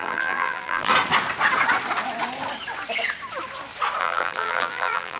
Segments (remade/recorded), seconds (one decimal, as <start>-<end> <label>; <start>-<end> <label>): 0.0-0.9 remade; 0.9-4.0 recorded; 4.0-5.2 remade

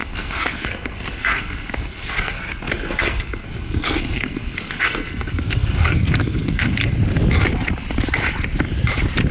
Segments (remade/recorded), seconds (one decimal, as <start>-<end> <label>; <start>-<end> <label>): 0.0-6.8 remade; 6.8-9.3 recorded

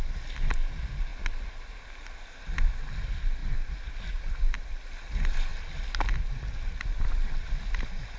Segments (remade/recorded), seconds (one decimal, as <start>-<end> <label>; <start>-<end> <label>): 0.0-8.2 recorded

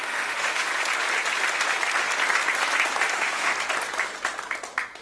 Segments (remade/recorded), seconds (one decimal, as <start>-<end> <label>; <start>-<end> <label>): 0.0-0.7 remade; 0.7-3.1 recorded; 3.1-3.5 remade; 3.5-5.0 recorded

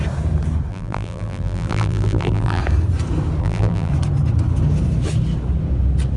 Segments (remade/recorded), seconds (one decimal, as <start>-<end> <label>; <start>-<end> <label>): 0.0-0.7 recorded; 0.7-2.6 remade; 2.6-3.4 recorded; 3.4-3.9 remade; 3.9-6.2 recorded